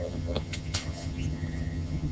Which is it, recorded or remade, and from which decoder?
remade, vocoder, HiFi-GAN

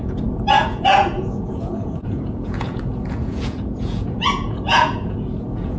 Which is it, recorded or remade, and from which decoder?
remade, vocoder, Vocos